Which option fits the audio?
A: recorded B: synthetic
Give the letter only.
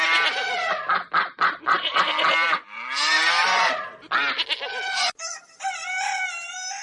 A